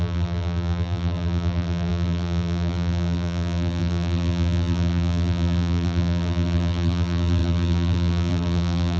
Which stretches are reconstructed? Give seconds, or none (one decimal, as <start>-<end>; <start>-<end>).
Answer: 0.0-9.0